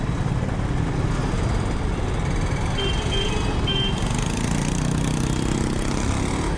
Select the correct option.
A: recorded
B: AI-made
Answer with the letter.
A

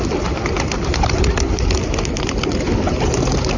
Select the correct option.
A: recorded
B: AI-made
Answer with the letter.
A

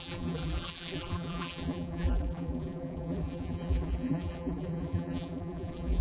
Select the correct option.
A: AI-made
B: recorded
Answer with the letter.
A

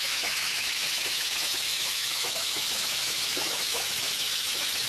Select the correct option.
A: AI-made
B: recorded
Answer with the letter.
A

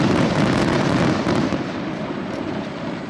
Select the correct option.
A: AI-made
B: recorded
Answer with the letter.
A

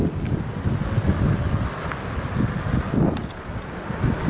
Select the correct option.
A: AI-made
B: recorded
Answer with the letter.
A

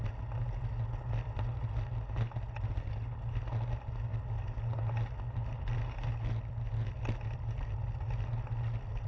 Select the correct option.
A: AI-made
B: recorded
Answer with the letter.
B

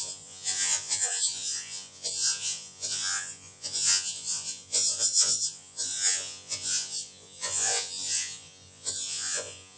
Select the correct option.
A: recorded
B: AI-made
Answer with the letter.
B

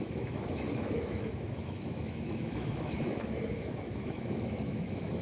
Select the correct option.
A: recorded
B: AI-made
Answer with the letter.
B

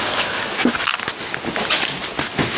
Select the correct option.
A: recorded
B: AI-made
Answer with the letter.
A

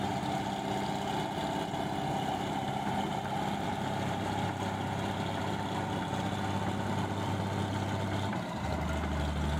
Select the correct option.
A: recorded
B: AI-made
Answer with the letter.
A